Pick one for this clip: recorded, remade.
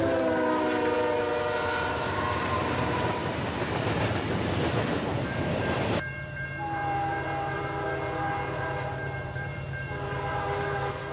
remade